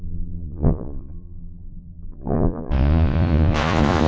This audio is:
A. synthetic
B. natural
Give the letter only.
A